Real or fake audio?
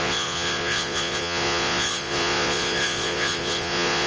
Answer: fake